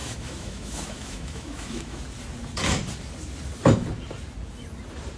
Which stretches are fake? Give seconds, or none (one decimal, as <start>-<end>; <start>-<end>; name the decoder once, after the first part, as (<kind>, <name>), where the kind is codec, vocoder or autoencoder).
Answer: 0.0-2.0 (autoencoder, DAC-VAE)